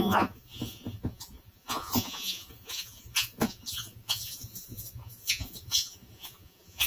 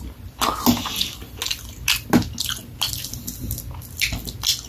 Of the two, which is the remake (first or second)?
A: first